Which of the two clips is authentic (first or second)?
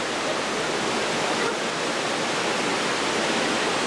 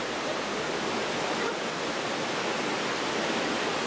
first